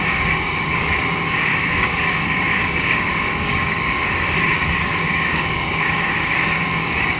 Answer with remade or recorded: remade